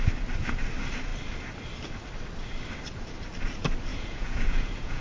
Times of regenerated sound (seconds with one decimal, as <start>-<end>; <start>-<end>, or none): 3.9-5.0